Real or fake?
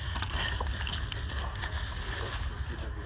real